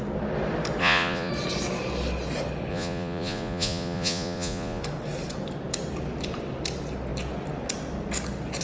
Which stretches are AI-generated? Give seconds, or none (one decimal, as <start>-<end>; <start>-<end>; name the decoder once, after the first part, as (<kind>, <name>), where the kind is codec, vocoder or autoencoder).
0.8-1.3 (vocoder, Vocos); 2.7-4.8